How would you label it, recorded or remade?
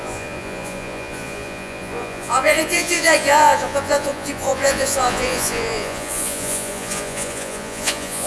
remade